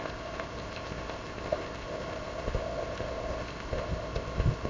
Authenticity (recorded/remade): remade